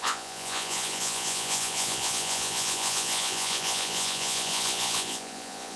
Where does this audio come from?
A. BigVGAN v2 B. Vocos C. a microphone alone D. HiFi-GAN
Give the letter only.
B